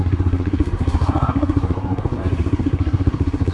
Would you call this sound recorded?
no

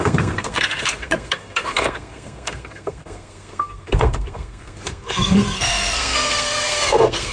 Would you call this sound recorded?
no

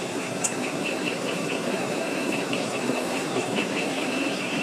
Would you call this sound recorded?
no